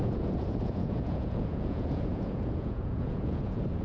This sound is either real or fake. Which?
fake